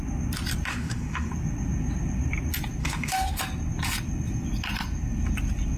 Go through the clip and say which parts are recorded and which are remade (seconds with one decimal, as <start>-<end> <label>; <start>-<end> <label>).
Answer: 0.0-0.7 recorded; 0.7-1.3 remade; 1.3-2.8 recorded; 2.8-3.4 remade; 3.4-5.8 recorded